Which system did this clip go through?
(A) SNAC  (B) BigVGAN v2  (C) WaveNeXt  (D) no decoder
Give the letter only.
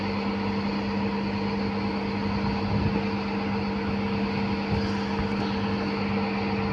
D